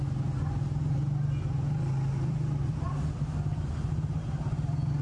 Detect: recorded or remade recorded